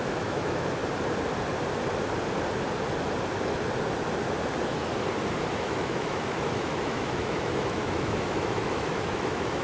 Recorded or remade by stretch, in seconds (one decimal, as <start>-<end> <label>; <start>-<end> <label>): 0.0-0.8 remade; 0.8-5.6 recorded; 5.6-9.6 remade